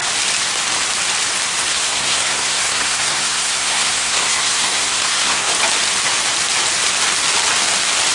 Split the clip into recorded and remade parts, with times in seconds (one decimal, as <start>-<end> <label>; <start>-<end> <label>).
0.0-1.7 recorded; 1.7-5.5 remade; 5.5-8.1 recorded